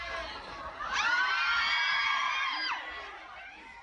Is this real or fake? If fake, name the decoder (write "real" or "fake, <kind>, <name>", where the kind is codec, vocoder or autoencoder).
real